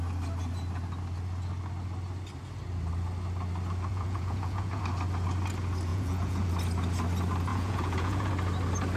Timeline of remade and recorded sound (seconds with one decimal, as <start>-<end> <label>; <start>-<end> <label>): 0.0-3.9 recorded; 3.9-4.8 remade; 4.8-5.9 recorded; 5.9-6.5 remade; 6.5-7.5 recorded; 7.5-8.3 remade; 8.3-9.0 recorded